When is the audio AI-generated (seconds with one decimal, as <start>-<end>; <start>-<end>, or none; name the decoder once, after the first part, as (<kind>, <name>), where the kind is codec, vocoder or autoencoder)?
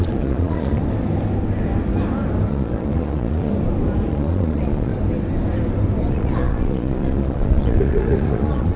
0.0-0.8 (vocoder, Vocos); 2.5-3.5; 4.1-4.9; 6.1-8.8